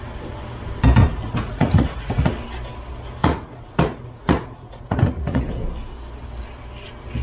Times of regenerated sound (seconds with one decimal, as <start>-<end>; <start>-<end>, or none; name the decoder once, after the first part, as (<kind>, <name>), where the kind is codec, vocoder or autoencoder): 1.0-2.3 (vocoder, Vocos); 3.2-5.4